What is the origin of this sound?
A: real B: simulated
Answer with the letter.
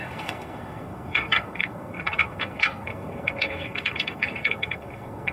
B